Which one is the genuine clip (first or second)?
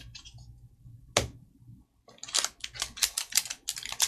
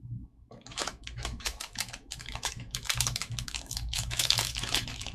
first